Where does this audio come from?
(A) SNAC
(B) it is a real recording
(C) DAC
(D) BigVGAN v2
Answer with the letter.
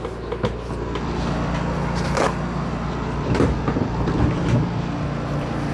B